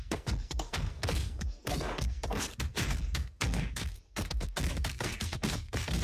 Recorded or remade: remade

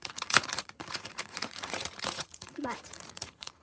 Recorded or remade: remade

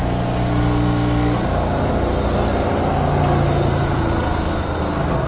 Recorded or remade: recorded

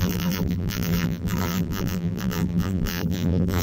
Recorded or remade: remade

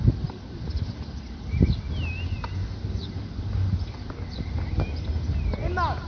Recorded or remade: recorded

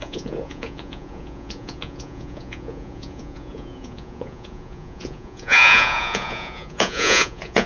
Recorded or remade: remade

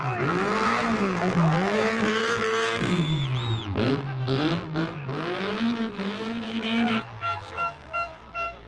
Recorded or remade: remade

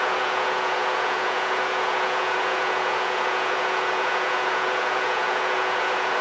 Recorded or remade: remade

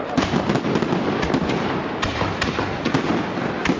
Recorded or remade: recorded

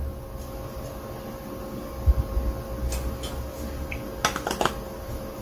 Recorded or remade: recorded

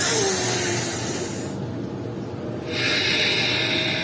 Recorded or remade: recorded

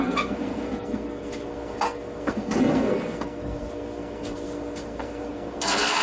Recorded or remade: remade